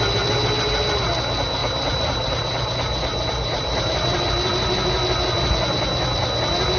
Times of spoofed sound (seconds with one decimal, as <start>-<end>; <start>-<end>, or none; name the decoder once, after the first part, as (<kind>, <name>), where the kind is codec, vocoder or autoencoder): 1.6-4.2 (vocoder, BigVGAN v2)